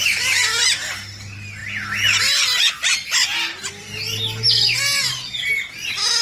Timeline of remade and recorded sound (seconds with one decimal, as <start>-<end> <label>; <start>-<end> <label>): 0.0-6.2 recorded